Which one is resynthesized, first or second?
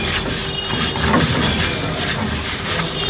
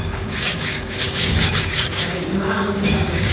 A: second